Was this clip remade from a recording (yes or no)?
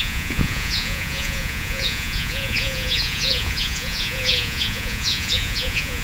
yes